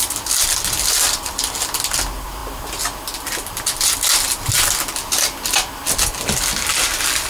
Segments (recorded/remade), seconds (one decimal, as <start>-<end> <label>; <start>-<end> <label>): 0.0-7.3 recorded